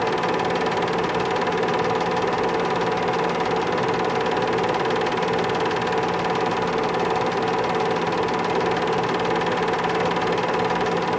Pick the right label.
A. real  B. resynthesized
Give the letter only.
A